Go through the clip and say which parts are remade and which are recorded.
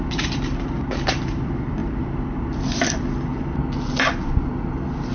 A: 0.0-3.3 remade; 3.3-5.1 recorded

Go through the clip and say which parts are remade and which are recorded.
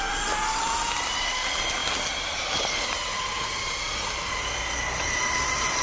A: 0.0-5.8 recorded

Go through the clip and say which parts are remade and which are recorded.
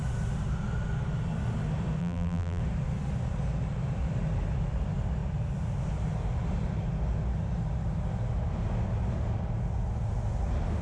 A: 0.0-2.0 recorded; 2.0-2.6 remade; 2.6-10.8 recorded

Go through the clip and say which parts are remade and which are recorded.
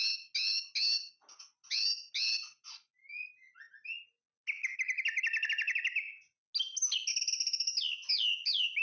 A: 0.0-8.8 recorded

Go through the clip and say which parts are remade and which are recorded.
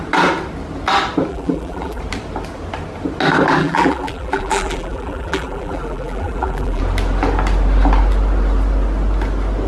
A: 0.0-1.3 recorded; 1.3-2.0 remade; 2.0-3.6 recorded; 3.6-6.8 remade; 6.8-9.7 recorded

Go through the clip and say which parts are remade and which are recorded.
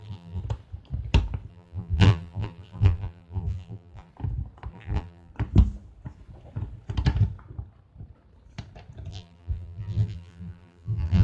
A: 0.0-0.4 remade; 0.4-1.5 recorded; 1.5-4.1 remade; 4.1-4.7 recorded; 4.7-5.3 remade; 5.3-9.1 recorded; 9.1-11.2 remade